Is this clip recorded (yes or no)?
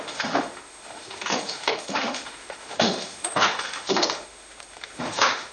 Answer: no